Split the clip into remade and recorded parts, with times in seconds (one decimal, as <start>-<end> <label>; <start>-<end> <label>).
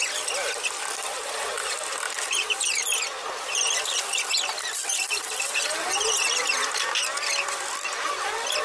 0.0-8.6 recorded